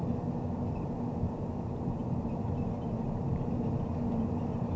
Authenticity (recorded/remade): recorded